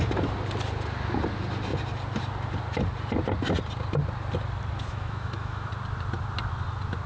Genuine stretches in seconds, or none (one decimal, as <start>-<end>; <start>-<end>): 0.0-4.9; 5.7-7.1